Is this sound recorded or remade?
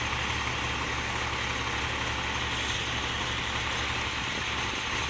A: recorded